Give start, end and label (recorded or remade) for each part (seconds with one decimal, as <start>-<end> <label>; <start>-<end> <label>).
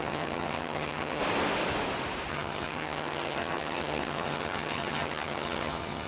0.0-1.2 remade; 1.2-2.3 recorded; 2.3-6.1 remade